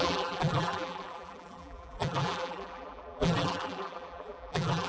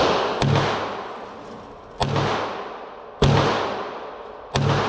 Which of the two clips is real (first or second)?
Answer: second